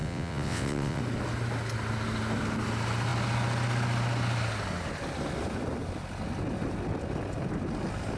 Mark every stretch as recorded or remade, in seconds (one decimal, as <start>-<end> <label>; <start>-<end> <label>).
0.0-1.0 remade; 1.0-8.2 recorded